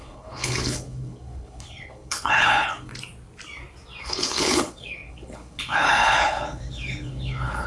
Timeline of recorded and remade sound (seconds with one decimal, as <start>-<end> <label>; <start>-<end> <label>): 0.0-2.9 remade; 2.9-4.0 recorded; 4.0-7.7 remade

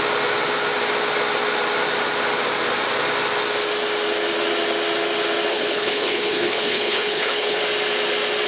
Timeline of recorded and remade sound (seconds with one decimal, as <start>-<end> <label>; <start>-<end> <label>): 0.0-5.5 recorded; 5.5-7.6 remade; 7.6-8.5 recorded